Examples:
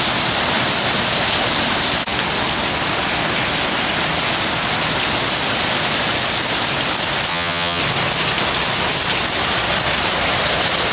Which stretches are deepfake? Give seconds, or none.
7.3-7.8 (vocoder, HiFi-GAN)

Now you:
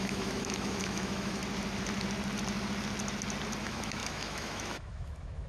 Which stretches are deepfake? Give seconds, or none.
0.0-1.4 (autoencoder, DAC-VAE); 3.6-5.5